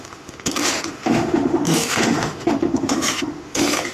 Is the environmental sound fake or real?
fake